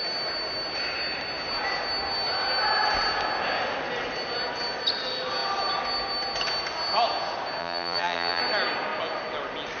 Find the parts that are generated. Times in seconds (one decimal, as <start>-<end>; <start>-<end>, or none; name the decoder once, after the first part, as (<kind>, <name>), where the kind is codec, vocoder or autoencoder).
7.6-8.4 (vocoder, BigVGAN v2)